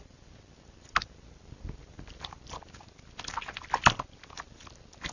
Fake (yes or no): no